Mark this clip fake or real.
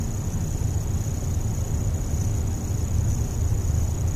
real